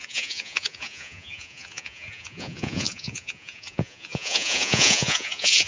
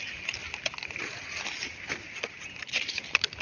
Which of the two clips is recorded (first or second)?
second